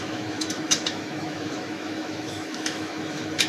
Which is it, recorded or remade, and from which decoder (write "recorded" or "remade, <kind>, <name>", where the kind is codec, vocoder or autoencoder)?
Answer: remade, autoencoder, DAC-VAE